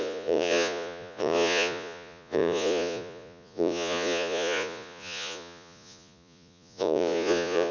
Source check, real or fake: fake